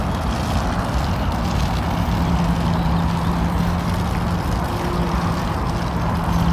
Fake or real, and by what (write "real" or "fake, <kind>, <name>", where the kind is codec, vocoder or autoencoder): real